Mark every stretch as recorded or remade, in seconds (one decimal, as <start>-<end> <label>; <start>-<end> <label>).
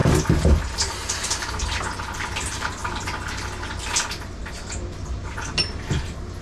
0.0-6.4 recorded